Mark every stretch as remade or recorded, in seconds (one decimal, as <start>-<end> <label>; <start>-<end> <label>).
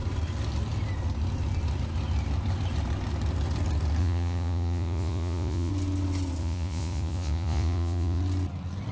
0.0-4.0 recorded; 4.0-5.7 remade; 5.7-6.4 recorded; 6.4-8.2 remade; 8.2-8.9 recorded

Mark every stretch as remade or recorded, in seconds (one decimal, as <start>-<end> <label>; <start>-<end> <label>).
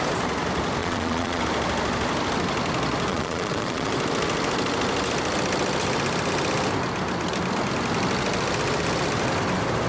0.0-0.8 recorded; 0.8-1.4 remade; 1.4-3.1 recorded; 3.1-3.9 remade; 3.9-9.9 recorded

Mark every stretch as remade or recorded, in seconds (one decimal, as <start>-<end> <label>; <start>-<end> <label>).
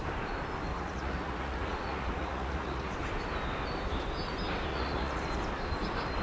0.0-0.7 recorded; 0.7-2.9 remade; 2.9-4.7 recorded; 4.7-5.2 remade; 5.2-6.2 recorded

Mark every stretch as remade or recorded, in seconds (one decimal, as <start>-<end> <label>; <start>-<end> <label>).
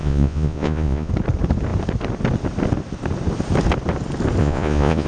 0.0-1.1 remade; 1.1-4.4 recorded; 4.4-5.1 remade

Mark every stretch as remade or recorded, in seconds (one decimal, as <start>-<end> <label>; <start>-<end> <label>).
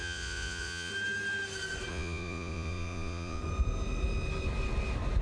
0.0-0.9 remade; 0.9-1.9 recorded; 1.9-3.4 remade; 3.4-5.2 recorded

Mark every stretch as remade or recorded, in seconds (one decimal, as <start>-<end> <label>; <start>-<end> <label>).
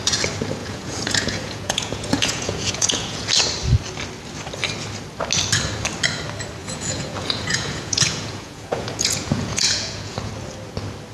0.0-0.6 recorded; 0.6-3.3 remade; 3.3-6.6 recorded; 6.6-10.3 remade; 10.3-11.1 recorded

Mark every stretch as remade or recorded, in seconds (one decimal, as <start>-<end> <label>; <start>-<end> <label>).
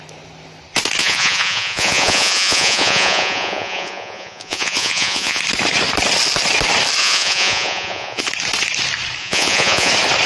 0.0-1.0 recorded; 1.0-5.4 remade; 5.4-7.0 recorded; 7.0-8.2 remade; 8.2-9.2 recorded; 9.2-9.9 remade; 9.9-10.3 recorded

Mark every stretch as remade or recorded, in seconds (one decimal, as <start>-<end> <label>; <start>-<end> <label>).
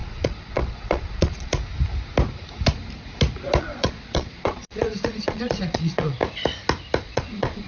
0.0-1.5 remade; 1.5-3.6 recorded; 3.6-6.2 remade; 6.2-7.0 recorded; 7.0-7.7 remade